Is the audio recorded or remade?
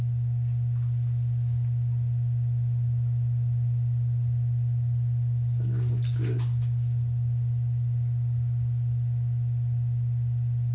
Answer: recorded